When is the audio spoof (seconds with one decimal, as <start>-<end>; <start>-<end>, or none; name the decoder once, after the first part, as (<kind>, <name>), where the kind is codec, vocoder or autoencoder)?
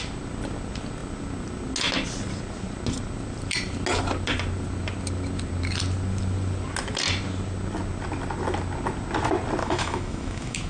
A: 9.6-10.7 (autoencoder, DAC-VAE)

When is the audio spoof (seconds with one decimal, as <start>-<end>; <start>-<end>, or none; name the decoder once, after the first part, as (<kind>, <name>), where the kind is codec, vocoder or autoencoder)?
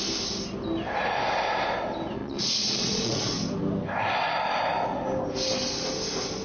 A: 2.2-3.3 (vocoder, Vocos)